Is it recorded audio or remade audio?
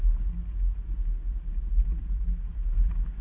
recorded